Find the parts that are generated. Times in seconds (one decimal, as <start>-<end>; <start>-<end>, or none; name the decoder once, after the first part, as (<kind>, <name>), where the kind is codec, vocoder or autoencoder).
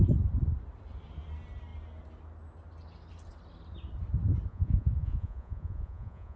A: 4.5-6.4 (vocoder, Vocos)